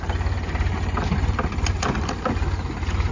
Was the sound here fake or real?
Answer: real